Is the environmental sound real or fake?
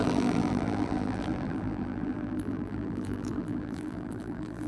fake